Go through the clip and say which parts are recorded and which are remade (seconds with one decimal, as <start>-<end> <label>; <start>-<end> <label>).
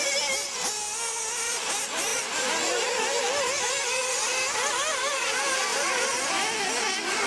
0.0-7.3 recorded